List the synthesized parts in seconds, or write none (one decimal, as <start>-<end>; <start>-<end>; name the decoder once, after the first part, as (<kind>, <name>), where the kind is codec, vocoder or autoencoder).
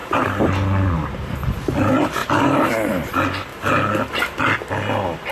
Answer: 0.0-0.5 (vocoder, BigVGAN v2)